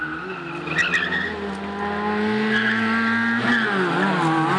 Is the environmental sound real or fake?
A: real